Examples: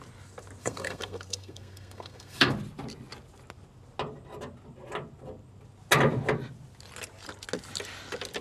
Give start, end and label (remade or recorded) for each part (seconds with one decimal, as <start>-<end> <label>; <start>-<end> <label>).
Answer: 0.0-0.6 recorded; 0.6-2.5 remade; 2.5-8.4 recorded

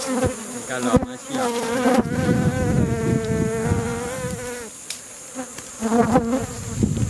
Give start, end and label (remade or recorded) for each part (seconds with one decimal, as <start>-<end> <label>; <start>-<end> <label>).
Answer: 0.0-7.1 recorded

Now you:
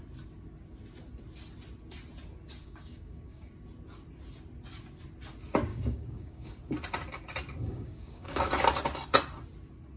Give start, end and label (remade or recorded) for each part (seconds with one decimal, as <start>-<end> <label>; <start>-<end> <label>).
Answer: 0.0-2.6 recorded; 2.6-3.5 remade; 3.5-5.7 recorded; 5.7-6.6 remade; 6.6-7.6 recorded; 7.6-8.5 remade; 8.5-10.0 recorded

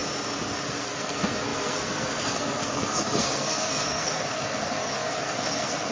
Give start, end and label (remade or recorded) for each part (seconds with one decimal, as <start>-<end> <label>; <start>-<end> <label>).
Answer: 0.0-0.7 recorded; 0.7-5.9 remade